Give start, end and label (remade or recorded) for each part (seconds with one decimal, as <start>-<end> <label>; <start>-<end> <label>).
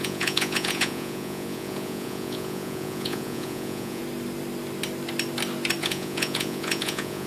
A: 0.0-4.0 remade; 4.0-5.8 recorded; 5.8-7.3 remade